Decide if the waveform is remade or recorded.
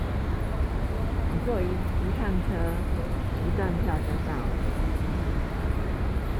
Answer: recorded